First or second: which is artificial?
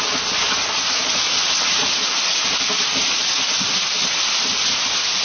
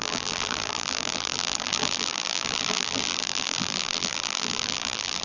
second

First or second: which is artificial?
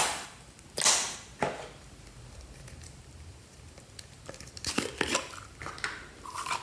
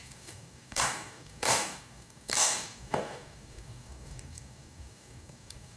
second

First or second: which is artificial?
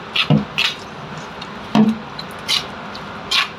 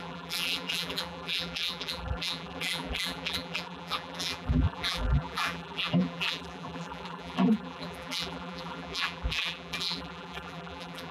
second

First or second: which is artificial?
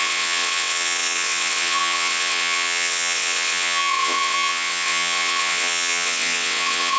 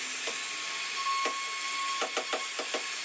first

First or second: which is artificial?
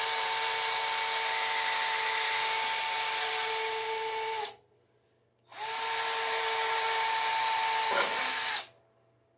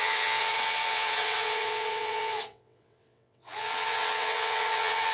second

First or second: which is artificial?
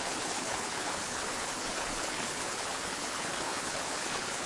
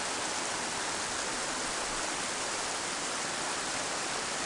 first